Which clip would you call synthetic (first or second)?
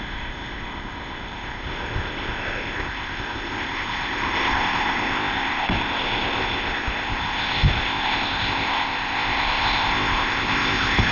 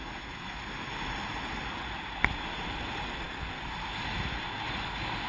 first